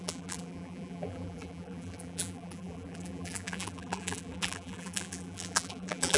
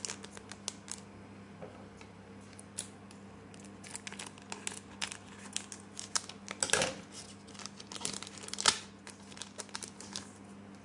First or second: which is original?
second